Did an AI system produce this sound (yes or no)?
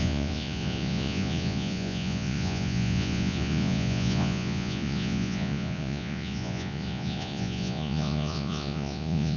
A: yes